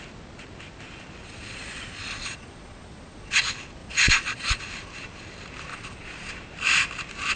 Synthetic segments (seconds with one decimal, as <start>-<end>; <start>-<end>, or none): 1.2-3.4; 3.8-4.6; 5.7-6.3